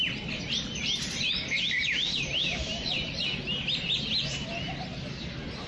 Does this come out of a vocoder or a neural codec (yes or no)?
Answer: no